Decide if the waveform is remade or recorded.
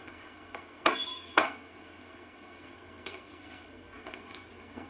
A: remade